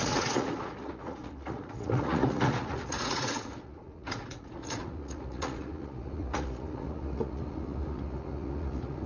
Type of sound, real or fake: fake